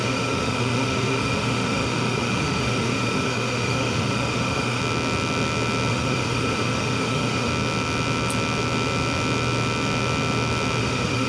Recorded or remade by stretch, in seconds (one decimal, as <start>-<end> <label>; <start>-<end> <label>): 0.0-4.8 remade; 4.8-5.9 recorded; 5.9-7.5 remade; 7.5-10.8 recorded; 10.8-11.3 remade